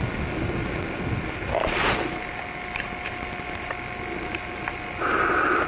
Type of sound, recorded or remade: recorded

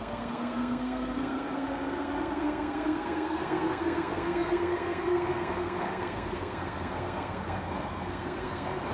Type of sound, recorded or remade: remade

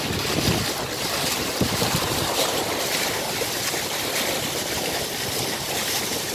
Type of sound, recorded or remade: recorded